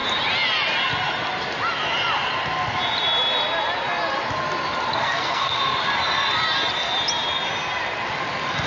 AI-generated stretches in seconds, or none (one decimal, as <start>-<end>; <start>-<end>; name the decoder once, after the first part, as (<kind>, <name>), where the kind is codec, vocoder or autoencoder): 5.0-5.6 (codec, SNAC)